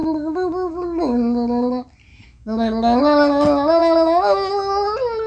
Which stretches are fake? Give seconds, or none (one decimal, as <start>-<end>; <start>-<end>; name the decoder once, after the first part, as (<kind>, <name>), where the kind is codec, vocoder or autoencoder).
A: 0.0-0.7 (autoencoder, DAC-VAE); 2.1-3.0; 3.8-4.5